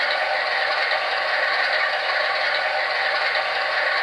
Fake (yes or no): no